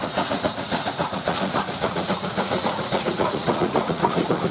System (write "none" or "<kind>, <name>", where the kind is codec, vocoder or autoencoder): vocoder, Vocos